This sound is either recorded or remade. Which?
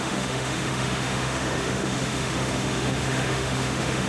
remade